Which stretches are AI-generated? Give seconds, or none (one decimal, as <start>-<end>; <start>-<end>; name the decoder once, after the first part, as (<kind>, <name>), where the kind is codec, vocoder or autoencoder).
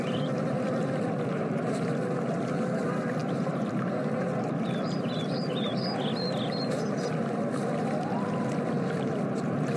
none